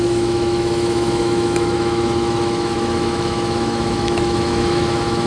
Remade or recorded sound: remade